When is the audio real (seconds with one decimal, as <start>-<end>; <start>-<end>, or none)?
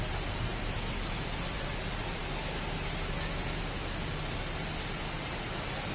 2.2-5.2